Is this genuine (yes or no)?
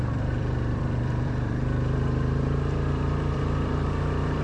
no